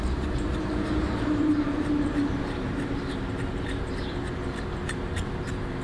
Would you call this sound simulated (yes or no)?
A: yes